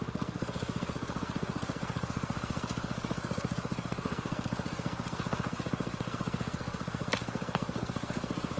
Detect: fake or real fake